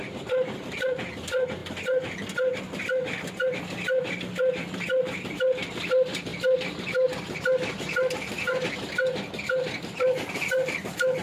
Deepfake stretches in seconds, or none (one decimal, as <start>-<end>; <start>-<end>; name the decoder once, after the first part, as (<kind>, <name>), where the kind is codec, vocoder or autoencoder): none